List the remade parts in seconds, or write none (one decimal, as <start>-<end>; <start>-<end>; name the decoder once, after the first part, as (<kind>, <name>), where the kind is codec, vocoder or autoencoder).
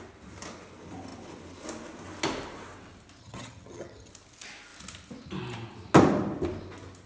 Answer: 3.2-4.1 (vocoder, HiFi-GAN)